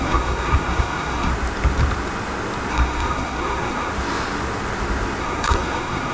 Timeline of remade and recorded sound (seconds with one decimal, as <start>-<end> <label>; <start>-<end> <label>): 0.0-1.3 remade; 1.3-2.7 recorded; 2.7-3.9 remade; 3.9-5.2 recorded; 5.2-6.1 remade